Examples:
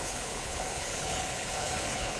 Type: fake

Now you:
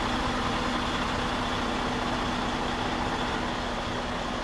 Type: real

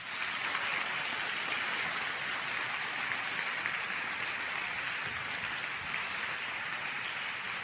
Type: real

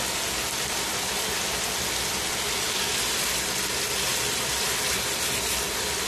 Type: real